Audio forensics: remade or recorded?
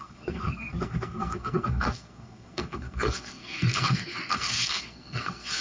remade